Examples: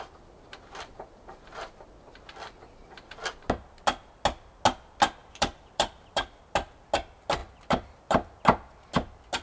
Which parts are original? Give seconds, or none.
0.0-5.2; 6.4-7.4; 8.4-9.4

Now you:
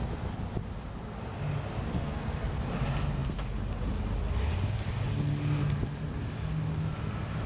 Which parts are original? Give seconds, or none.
0.0-1.9; 2.6-7.5

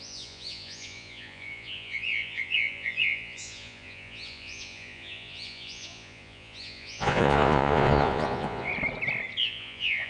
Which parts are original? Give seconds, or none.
8.7-9.4

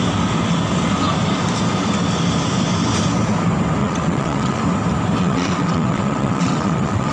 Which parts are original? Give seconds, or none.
0.0-3.8; 4.6-5.2

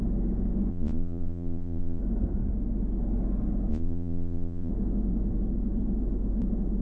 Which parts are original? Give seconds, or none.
0.0-0.7; 2.0-3.7; 4.7-6.8